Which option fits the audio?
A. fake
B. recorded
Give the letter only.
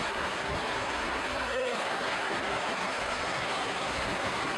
A